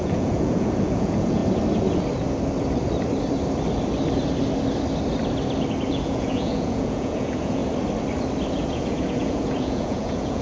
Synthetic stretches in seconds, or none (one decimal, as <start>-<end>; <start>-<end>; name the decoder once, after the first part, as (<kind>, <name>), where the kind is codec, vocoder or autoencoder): 0.0-1.4 (vocoder, Vocos); 5.9-7.6; 8.5-10.4